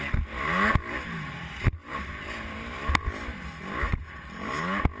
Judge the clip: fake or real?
real